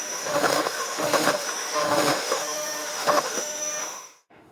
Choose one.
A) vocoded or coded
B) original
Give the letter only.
A